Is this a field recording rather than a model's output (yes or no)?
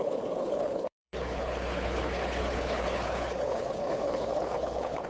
no